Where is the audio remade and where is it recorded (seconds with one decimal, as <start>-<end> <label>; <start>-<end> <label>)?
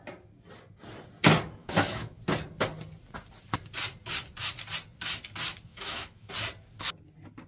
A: 0.0-1.6 recorded; 1.6-2.2 remade; 2.2-5.7 recorded; 5.7-6.3 remade; 6.3-7.5 recorded